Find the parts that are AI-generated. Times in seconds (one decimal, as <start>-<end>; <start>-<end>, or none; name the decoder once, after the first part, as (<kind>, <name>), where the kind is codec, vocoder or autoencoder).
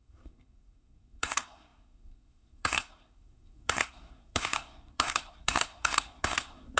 0.0-6.8 (codec, SNAC)